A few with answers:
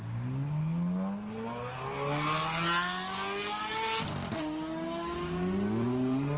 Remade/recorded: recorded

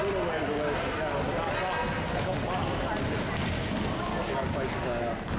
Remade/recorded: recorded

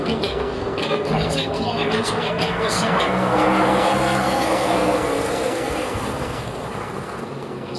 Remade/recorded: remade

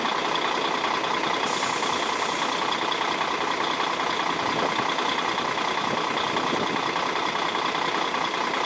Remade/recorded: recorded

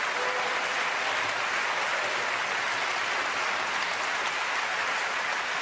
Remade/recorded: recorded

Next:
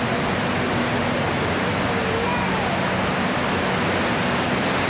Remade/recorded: recorded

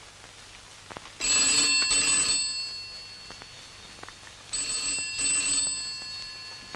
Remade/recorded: recorded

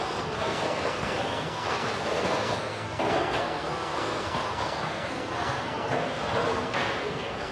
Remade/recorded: remade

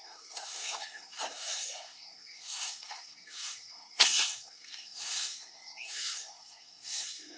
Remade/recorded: remade